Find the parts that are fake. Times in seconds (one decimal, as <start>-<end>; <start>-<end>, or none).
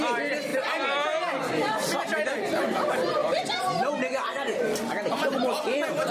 0.5-2.3; 3.2-3.9